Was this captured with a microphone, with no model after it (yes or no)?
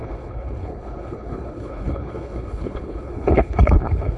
no